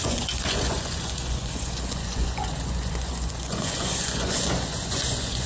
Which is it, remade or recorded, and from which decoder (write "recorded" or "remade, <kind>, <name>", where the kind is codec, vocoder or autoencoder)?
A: remade, vocoder, Vocos